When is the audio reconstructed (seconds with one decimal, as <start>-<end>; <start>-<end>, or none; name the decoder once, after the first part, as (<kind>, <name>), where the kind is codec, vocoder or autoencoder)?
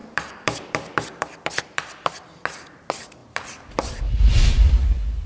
0.0-2.1 (vocoder, BigVGAN v2); 3.2-4.3